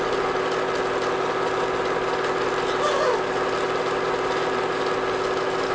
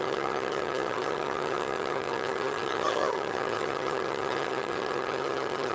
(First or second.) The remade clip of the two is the second